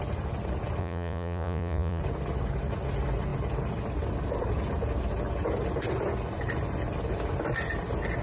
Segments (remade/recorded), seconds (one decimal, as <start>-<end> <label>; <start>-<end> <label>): 0.0-0.8 recorded; 0.8-2.0 remade; 2.0-8.2 recorded